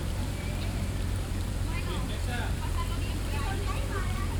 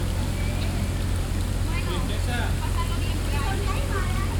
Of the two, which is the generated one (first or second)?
first